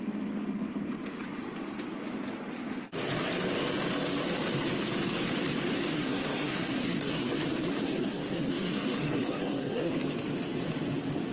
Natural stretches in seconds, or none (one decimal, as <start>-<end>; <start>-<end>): 0.0-5.9; 9.9-11.3